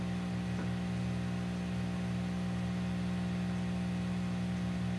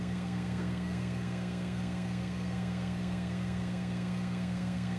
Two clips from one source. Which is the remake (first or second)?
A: second